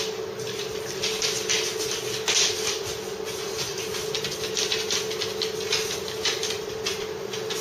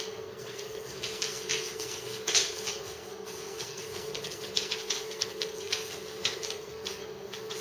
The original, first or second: first